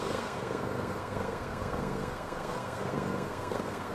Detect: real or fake fake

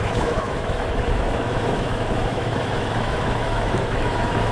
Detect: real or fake fake